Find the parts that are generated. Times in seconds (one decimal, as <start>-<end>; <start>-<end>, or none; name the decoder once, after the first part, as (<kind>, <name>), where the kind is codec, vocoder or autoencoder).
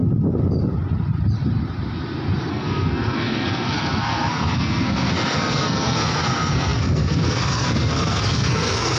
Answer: 2.5-9.0 (codec, SNAC)